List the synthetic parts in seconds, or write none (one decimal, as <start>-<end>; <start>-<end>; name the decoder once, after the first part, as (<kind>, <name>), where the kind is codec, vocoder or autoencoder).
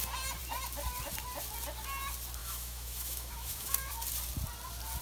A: 2.4-3.9 (autoencoder, DAC-VAE)